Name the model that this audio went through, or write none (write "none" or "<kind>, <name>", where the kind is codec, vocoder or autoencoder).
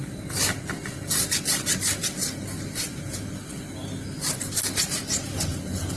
none